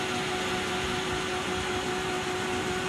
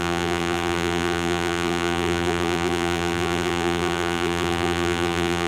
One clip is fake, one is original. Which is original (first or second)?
first